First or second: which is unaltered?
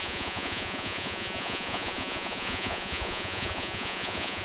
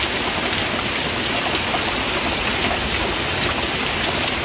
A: second